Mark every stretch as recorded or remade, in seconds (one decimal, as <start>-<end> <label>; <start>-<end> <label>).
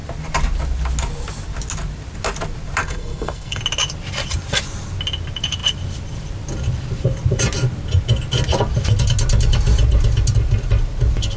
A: 0.0-2.8 recorded; 2.8-3.6 remade; 3.6-11.4 recorded